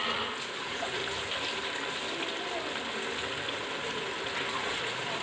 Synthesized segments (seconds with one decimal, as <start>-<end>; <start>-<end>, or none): 0.0-1.0; 3.5-4.1; 4.6-5.2